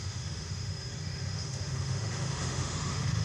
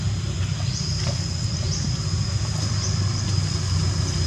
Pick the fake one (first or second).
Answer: first